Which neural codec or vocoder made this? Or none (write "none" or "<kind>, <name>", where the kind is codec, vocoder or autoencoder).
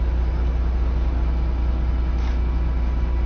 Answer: none